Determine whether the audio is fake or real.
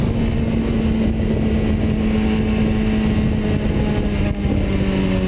real